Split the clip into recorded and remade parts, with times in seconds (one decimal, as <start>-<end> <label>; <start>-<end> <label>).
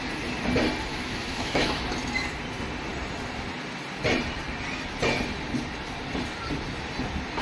0.0-0.9 recorded; 0.9-1.8 remade; 1.8-7.4 recorded